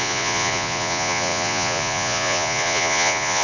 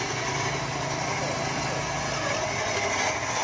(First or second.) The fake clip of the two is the first